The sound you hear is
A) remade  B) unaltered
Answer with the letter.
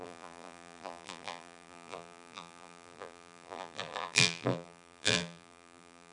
A